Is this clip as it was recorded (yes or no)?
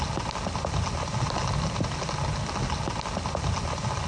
yes